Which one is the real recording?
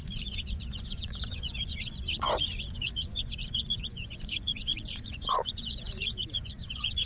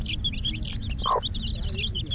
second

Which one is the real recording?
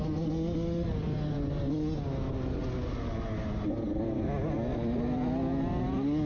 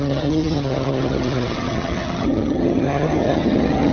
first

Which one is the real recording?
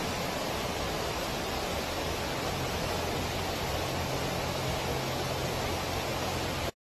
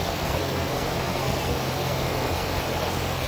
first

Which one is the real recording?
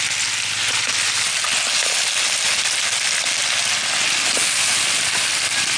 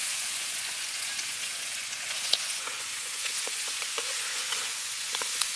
first